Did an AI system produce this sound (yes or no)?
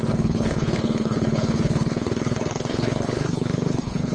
yes